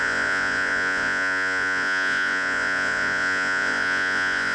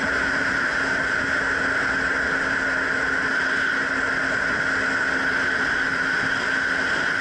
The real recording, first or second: second